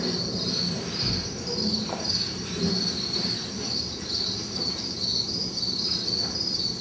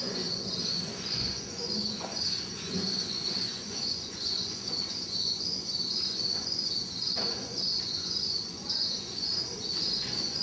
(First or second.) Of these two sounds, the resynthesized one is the second